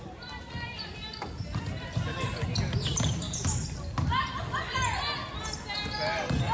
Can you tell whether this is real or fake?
real